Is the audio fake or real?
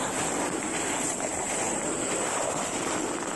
real